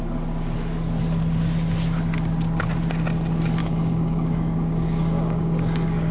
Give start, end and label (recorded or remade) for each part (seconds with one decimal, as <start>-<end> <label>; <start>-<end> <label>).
0.0-3.6 recorded; 3.6-6.1 remade